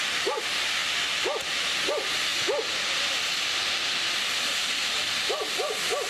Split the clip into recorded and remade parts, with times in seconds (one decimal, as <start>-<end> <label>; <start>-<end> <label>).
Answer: 0.0-6.1 recorded